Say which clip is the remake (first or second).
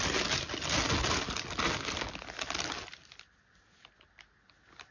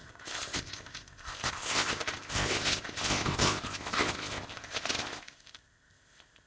second